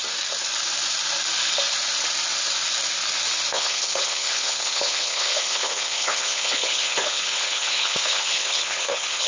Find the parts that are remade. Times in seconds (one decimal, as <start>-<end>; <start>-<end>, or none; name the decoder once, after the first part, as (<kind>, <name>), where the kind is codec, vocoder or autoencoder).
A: 3.5-9.3 (codec, HILCodec)